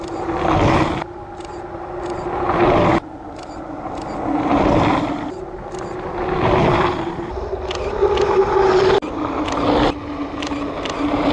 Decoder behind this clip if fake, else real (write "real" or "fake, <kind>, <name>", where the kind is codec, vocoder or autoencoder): real